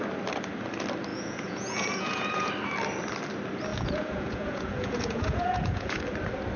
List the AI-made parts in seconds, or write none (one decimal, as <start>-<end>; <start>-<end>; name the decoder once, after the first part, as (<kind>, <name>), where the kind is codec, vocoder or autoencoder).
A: 1.1-2.5 (vocoder, Vocos); 3.7-6.0

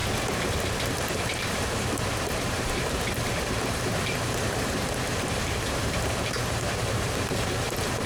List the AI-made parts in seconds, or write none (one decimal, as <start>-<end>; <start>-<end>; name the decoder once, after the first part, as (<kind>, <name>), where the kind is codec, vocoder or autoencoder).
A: 0.9-8.1 (vocoder, BigVGAN v2)